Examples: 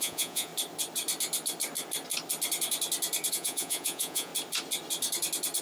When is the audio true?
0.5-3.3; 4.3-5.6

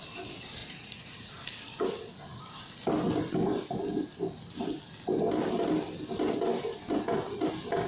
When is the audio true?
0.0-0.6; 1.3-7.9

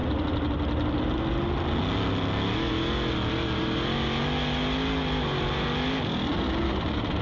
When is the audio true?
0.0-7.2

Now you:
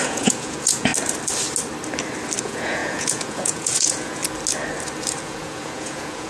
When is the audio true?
0.9-2.4; 4.2-5.2

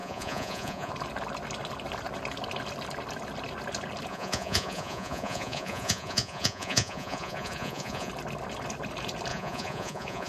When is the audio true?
0.9-4.1; 8.1-9.3

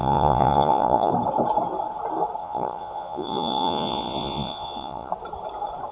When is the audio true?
1.1-2.4; 5.1-5.9